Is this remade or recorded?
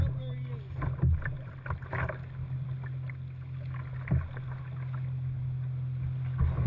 recorded